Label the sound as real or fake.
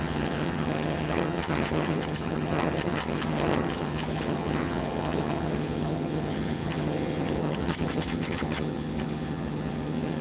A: fake